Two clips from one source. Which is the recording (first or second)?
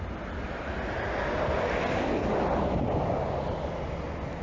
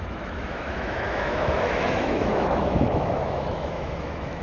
first